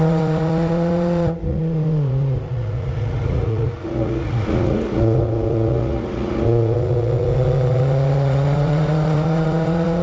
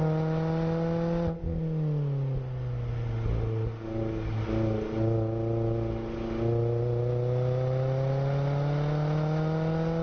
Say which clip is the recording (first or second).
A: second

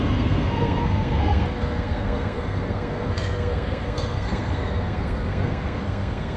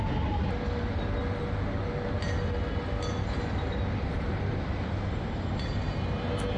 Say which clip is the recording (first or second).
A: second